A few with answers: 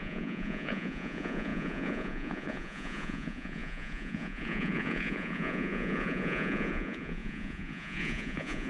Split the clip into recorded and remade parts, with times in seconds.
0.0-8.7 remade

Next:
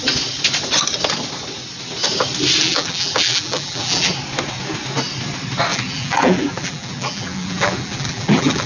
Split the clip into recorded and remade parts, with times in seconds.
0.0-2.6 recorded; 2.6-4.1 remade; 4.1-5.7 recorded; 5.7-8.7 remade

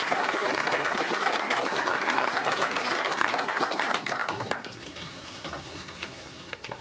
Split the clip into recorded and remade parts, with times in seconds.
0.0-6.8 remade

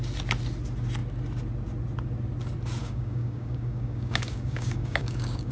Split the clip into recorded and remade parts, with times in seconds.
0.0-2.8 recorded; 2.8-5.5 remade

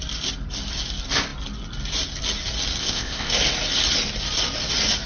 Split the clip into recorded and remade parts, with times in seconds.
0.0-2.8 recorded; 2.8-3.3 remade; 3.3-5.1 recorded

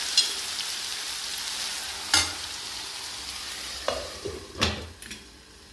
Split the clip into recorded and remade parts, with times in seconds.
0.0-1.7 recorded; 1.7-5.1 remade; 5.1-5.7 recorded

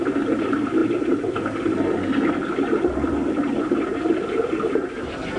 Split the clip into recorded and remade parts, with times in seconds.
0.0-5.4 recorded